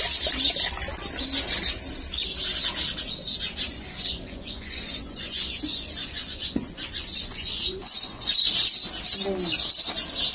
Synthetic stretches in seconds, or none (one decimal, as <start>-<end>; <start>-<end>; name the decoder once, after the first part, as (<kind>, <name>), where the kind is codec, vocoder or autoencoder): 3.7-8.5 (vocoder, Vocos)